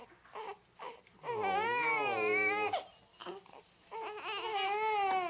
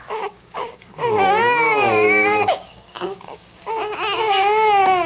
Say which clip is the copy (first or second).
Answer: second